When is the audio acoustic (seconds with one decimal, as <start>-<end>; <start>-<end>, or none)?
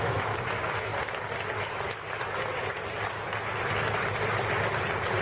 0.9-1.6; 2.6-5.2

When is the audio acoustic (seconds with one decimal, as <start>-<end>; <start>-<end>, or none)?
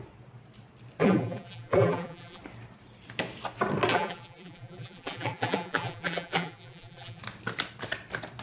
0.0-1.0; 2.4-3.9; 7.2-8.4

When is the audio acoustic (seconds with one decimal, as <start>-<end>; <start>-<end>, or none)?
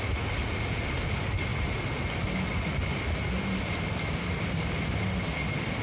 0.0-5.8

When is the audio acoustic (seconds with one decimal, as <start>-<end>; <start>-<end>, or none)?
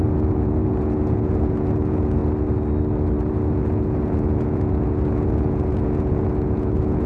2.2-3.3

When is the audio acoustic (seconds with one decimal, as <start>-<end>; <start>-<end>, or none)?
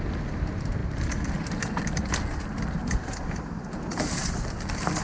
0.0-0.8; 2.1-2.8; 4.3-5.0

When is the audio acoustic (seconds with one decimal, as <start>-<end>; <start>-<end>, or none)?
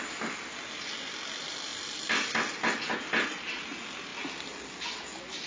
0.0-5.5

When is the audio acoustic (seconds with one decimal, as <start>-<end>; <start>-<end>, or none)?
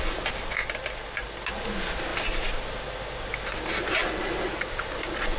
0.0-5.4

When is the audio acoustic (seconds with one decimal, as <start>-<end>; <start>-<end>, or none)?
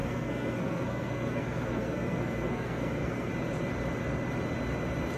3.3-5.2